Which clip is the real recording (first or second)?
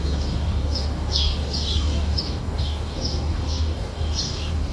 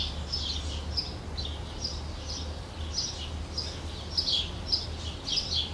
second